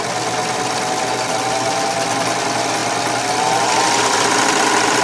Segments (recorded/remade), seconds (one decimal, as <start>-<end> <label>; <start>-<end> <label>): 0.0-5.0 recorded